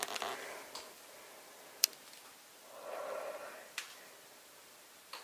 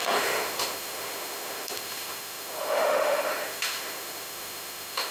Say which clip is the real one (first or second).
first